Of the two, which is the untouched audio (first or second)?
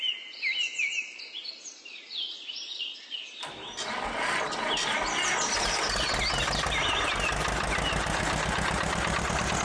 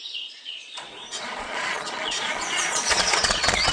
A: first